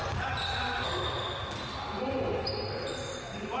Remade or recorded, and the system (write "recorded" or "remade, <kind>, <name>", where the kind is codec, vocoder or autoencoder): recorded